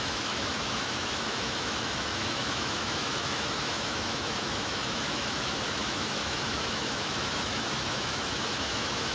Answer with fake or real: fake